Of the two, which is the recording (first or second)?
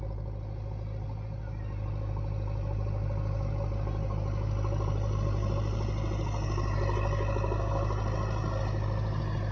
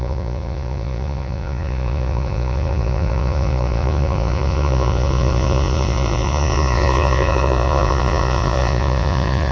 first